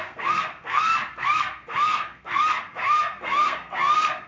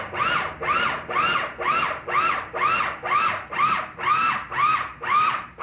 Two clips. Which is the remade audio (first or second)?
first